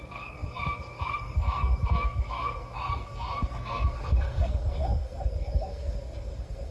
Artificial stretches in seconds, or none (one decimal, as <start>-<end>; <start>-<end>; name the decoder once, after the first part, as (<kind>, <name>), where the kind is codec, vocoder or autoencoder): 0.0-6.7 (codec, SNAC)